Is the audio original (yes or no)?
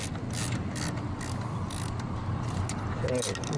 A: yes